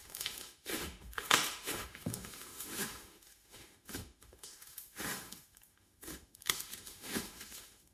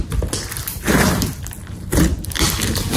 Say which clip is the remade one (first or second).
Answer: first